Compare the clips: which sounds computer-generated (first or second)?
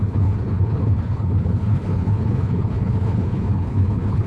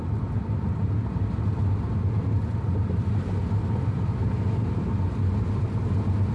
first